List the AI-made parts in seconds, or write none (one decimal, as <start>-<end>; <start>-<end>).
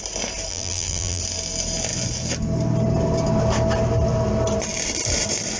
0.5-1.2